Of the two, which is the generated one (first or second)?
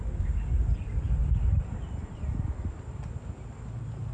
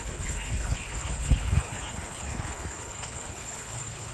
second